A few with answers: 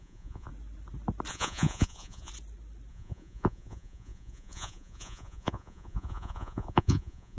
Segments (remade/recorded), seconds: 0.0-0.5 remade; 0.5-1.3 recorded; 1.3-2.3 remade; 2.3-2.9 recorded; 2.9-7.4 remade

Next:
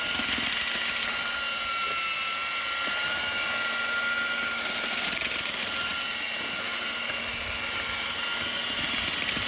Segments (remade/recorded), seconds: 0.0-9.5 recorded

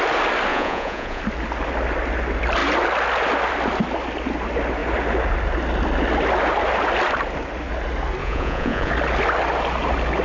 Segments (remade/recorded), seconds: 0.0-0.5 recorded; 0.5-1.2 remade; 1.2-8.2 recorded; 8.2-8.9 remade; 8.9-10.2 recorded

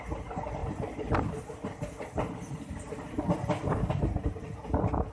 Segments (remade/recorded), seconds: 0.0-5.1 recorded

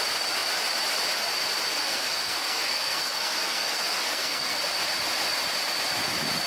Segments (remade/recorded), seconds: 0.0-1.7 recorded; 1.7-4.6 remade; 4.6-6.5 recorded